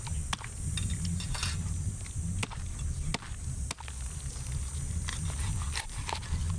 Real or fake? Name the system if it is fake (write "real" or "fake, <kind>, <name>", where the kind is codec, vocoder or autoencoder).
real